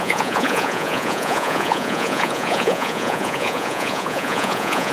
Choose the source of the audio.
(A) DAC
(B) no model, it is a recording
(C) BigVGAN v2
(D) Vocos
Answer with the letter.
D